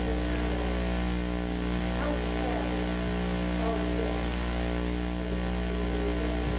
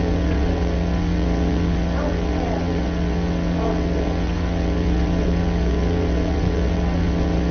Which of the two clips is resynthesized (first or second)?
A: second